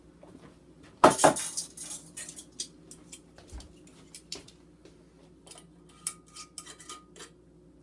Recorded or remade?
recorded